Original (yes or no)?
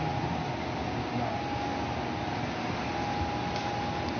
yes